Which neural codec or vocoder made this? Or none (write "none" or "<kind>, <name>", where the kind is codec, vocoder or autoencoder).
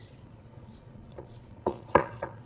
vocoder, Vocos